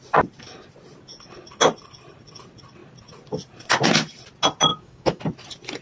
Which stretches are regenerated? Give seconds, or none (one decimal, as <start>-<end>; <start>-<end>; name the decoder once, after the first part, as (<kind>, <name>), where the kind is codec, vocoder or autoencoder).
4.7-5.2 (codec, DAC)